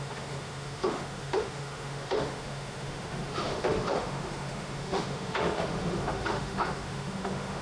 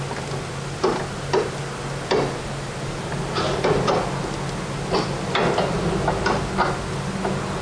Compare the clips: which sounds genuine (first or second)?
second